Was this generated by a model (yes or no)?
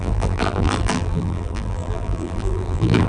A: yes